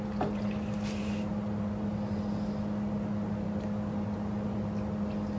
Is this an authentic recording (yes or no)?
yes